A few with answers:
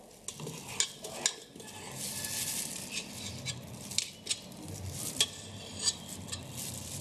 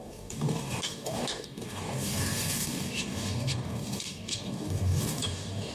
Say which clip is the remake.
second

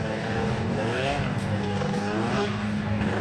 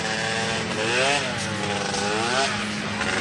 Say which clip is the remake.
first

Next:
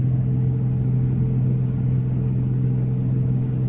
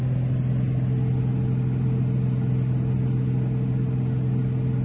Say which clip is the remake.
first